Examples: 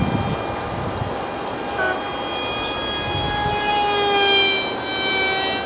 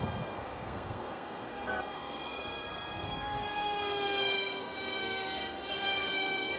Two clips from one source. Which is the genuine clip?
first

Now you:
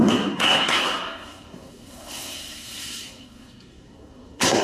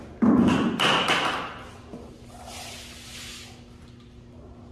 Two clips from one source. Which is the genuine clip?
second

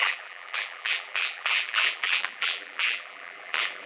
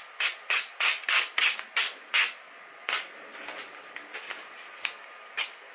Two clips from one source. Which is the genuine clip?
second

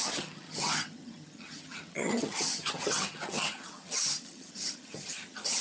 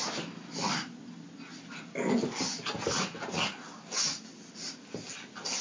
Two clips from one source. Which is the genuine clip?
second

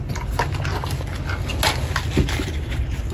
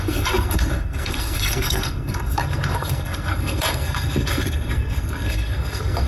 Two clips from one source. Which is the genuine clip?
first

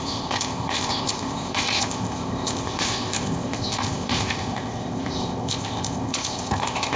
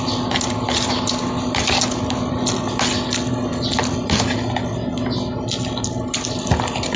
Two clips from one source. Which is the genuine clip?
second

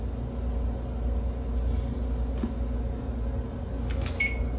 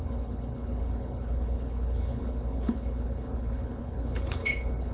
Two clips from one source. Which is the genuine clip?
first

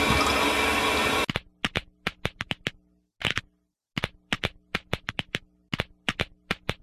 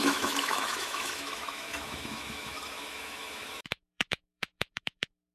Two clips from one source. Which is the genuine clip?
first